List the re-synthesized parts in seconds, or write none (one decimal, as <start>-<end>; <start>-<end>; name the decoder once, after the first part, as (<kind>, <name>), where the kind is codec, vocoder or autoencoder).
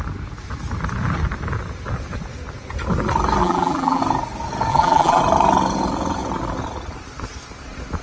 3.4-4.0 (vocoder, BigVGAN v2); 4.7-5.2